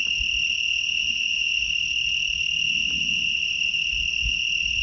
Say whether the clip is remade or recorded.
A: recorded